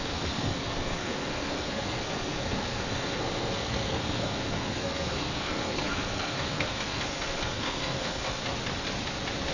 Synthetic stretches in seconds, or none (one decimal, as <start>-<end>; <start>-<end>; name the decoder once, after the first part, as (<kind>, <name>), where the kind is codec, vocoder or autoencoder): 0.0-8.4 (codec, SNAC)